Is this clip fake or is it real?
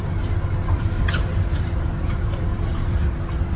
fake